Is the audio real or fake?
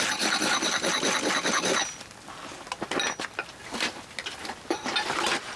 real